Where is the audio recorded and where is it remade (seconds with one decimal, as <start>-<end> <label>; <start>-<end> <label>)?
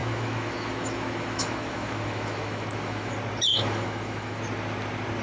0.0-3.1 remade; 3.1-3.5 recorded; 3.5-4.4 remade; 4.4-5.2 recorded